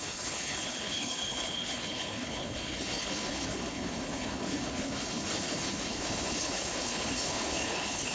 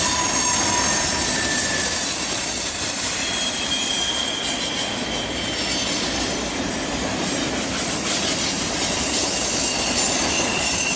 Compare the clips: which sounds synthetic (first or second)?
first